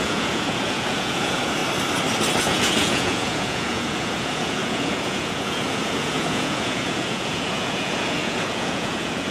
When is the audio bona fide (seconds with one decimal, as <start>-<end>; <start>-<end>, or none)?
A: 1.6-2.4